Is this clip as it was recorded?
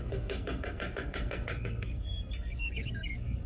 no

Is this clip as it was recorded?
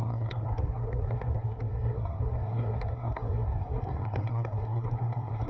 no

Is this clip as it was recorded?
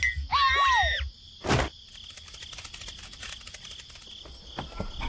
yes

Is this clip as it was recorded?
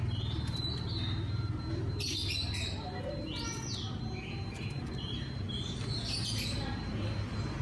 yes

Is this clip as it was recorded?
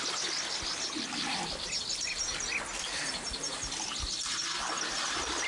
yes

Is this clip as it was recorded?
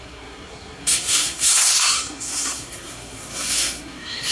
no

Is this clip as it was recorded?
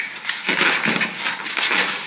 yes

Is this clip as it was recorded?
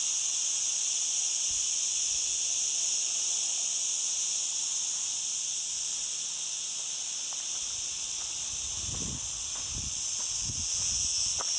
yes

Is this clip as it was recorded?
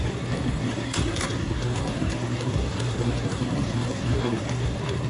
no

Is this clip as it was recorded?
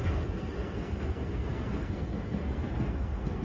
no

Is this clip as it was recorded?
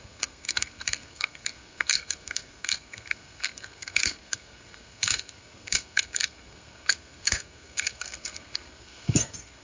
no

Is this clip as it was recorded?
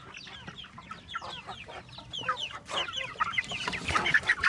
yes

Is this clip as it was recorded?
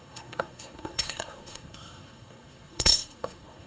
no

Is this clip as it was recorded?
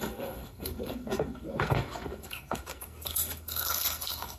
no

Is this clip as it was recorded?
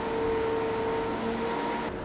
yes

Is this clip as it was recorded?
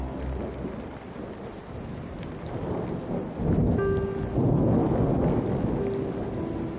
yes